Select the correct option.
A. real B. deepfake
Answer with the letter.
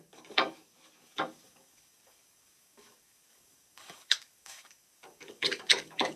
B